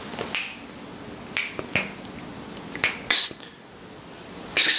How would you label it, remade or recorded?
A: recorded